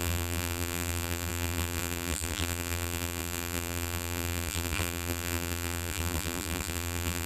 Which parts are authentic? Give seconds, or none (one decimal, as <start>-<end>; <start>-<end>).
none